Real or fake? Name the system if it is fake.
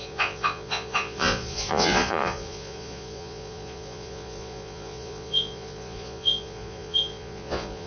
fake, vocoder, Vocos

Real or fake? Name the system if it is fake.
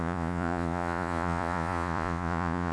fake, vocoder, Vocos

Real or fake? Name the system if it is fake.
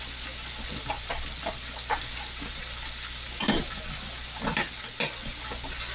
real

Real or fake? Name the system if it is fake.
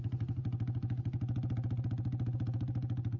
real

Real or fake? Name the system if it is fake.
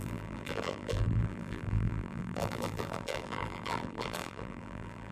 fake, vocoder, BigVGAN v2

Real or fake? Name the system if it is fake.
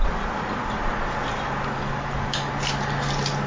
real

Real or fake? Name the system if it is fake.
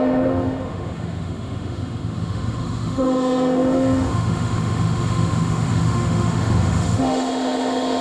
fake, autoencoder, DAC-VAE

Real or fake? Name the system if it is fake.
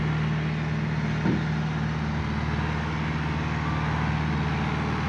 real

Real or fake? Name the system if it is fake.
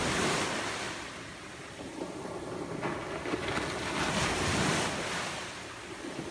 real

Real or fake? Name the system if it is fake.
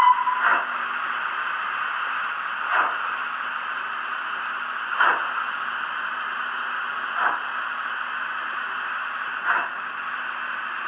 real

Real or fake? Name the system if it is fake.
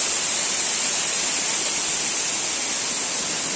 real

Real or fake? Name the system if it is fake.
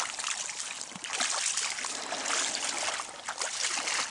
real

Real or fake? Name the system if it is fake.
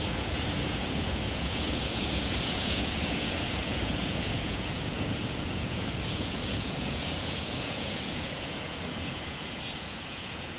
fake, vocoder, Vocos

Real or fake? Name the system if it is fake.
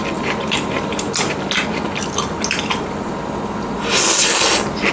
real